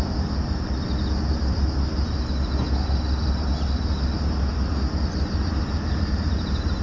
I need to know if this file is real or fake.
real